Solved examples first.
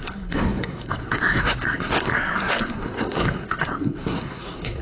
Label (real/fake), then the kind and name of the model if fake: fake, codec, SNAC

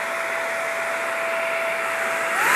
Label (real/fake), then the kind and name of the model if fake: real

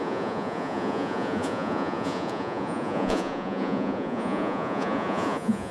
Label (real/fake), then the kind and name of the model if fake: fake, vocoder, Vocos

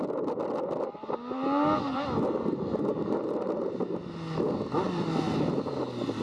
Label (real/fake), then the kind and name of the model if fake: real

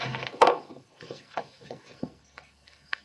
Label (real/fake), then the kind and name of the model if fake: fake, codec, SNAC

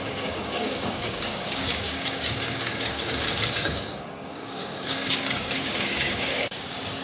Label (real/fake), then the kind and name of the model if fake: fake, codec, DAC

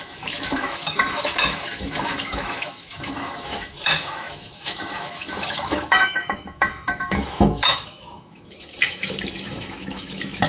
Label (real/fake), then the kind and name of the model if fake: fake, autoencoder, DAC-VAE